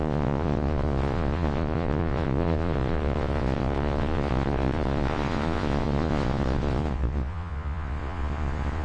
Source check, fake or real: fake